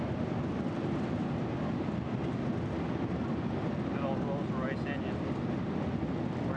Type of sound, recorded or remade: recorded